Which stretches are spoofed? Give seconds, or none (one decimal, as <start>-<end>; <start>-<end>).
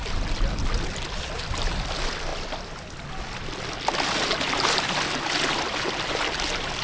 2.3-3.1; 5.7-6.8